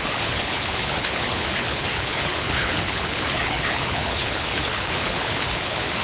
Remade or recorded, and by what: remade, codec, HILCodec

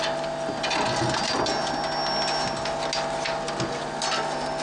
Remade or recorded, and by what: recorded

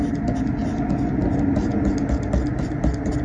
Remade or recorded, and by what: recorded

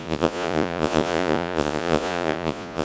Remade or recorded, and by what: remade, vocoder, Vocos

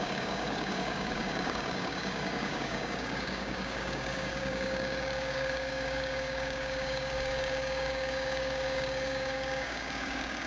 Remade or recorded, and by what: remade, codec, DAC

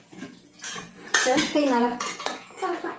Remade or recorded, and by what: remade, vocoder, Vocos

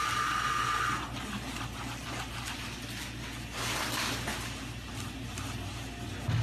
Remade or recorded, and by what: recorded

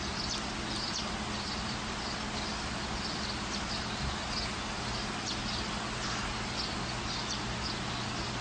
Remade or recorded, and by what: recorded